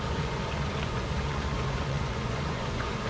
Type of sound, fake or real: fake